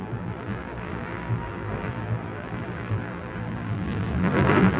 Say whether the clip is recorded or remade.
remade